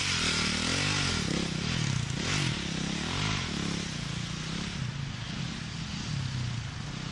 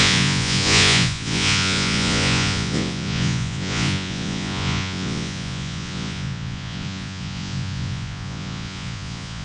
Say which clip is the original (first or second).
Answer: first